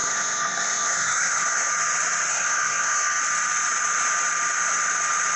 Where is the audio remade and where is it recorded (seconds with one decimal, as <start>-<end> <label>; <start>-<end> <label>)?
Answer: 0.0-1.7 remade; 1.7-2.3 recorded; 2.3-3.2 remade; 3.2-5.4 recorded